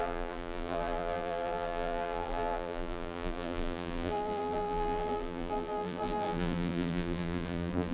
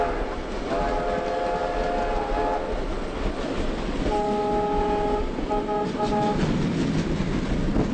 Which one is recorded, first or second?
second